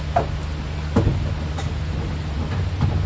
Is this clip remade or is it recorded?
recorded